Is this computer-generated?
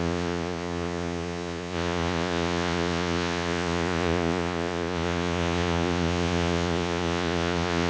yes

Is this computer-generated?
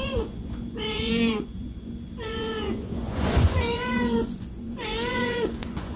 yes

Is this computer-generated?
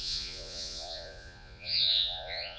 yes